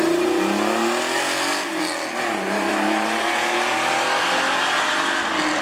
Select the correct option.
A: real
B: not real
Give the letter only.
A